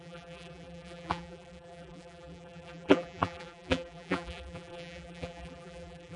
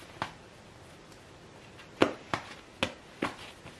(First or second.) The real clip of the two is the second